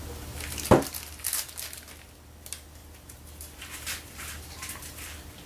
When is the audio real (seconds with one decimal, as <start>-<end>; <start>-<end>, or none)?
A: 0.0-5.5